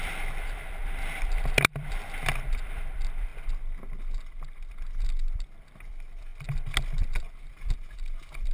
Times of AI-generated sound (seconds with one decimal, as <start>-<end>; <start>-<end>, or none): 0.0-3.3; 4.7-6.3; 7.2-8.5